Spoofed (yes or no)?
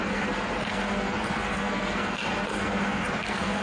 yes